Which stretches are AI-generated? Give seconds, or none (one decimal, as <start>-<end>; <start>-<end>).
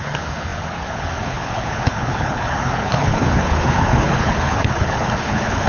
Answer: 0.0-5.7